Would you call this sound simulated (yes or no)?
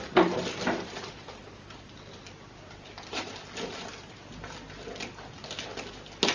no